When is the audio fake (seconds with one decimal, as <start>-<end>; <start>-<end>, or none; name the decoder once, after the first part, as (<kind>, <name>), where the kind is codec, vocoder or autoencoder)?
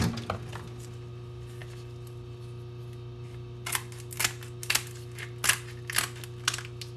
none